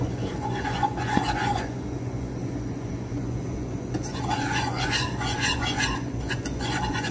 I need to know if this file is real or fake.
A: fake